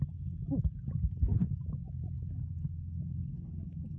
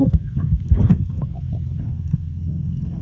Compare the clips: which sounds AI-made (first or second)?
second